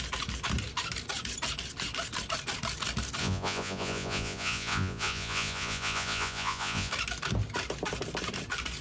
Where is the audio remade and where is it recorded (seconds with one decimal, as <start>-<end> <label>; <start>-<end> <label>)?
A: 0.0-3.2 recorded; 3.2-6.9 remade; 6.9-8.8 recorded